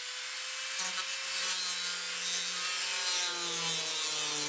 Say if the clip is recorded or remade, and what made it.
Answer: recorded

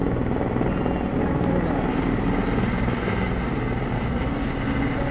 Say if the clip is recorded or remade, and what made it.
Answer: recorded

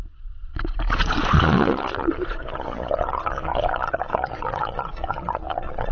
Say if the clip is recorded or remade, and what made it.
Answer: remade, vocoder, Vocos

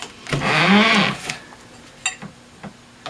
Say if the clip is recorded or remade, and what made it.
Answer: recorded